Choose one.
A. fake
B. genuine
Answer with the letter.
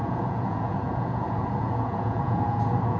A